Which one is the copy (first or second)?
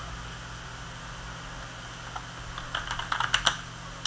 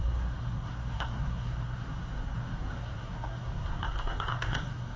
second